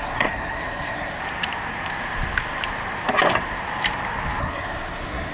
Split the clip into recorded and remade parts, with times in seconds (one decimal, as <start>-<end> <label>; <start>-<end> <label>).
0.0-1.2 remade; 1.2-4.4 recorded; 4.4-5.3 remade